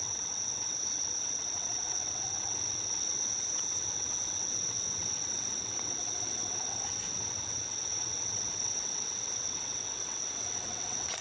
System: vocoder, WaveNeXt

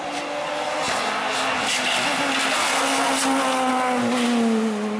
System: none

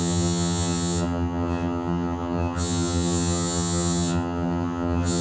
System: vocoder, HiFi-GAN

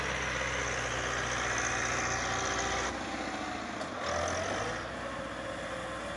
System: none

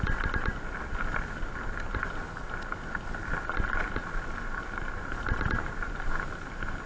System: none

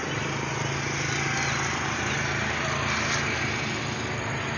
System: none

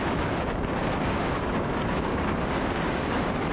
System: codec, DAC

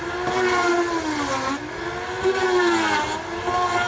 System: none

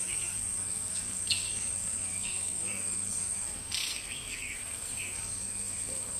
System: codec, SNAC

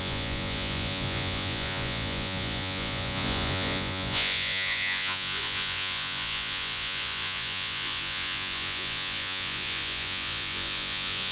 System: vocoder, Vocos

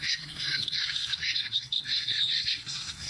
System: codec, SNAC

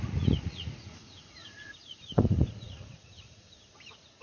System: vocoder, Vocos